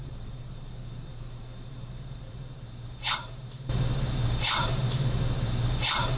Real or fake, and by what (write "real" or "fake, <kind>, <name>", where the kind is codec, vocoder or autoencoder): fake, vocoder, BigVGAN v2